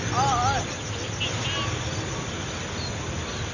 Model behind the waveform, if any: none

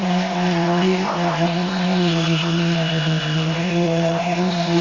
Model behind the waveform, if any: codec, ZipCodec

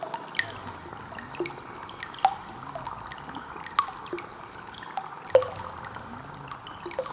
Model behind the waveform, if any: none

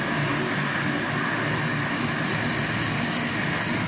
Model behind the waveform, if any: none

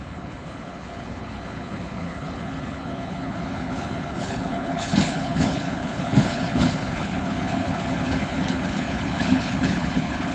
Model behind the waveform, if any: codec, HILCodec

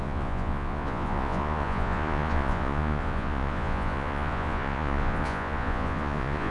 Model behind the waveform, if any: vocoder, Vocos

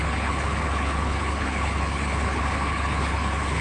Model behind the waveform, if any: codec, HILCodec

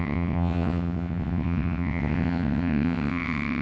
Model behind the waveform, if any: vocoder, WaveNeXt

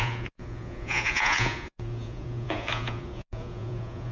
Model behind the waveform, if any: vocoder, Vocos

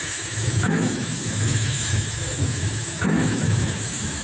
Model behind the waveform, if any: autoencoder, DAC-VAE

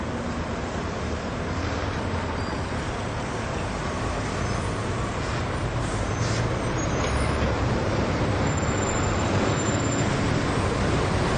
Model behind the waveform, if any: vocoder, BigVGAN v2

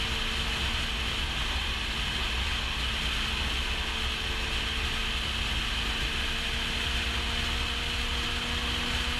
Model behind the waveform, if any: none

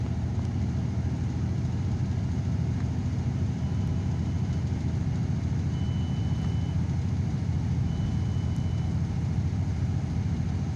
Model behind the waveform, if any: none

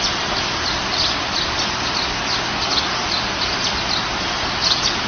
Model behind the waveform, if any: none